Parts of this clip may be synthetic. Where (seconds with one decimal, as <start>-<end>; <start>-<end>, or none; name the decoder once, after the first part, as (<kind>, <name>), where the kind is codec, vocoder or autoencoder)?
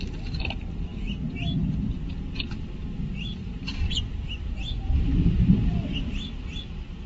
none